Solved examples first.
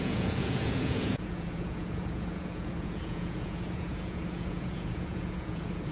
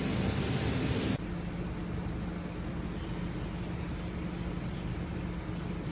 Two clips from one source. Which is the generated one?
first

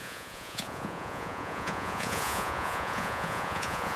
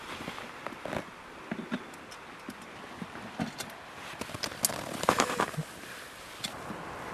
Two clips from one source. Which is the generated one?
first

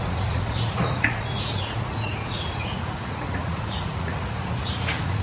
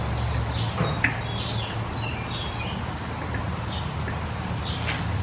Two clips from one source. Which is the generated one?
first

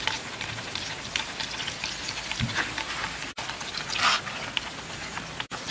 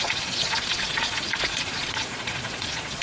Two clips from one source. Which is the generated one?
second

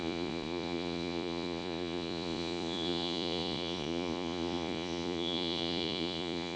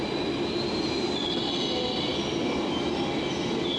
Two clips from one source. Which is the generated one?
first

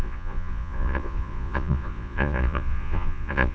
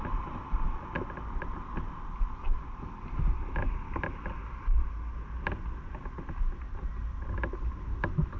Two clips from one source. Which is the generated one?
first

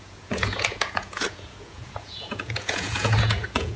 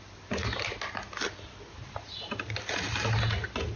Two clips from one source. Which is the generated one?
first